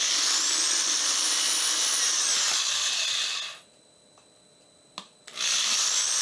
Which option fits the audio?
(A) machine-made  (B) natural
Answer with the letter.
B